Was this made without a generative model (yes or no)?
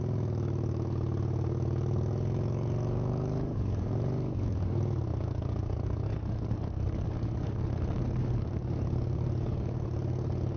no